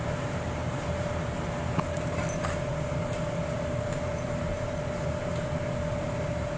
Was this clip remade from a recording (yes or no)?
yes